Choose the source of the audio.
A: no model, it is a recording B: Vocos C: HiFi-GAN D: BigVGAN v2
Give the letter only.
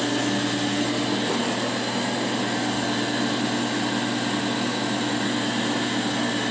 A